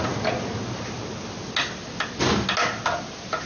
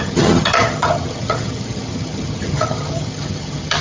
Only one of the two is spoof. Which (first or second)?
second